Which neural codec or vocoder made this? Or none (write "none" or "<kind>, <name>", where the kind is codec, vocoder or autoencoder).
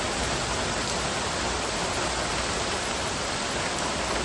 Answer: none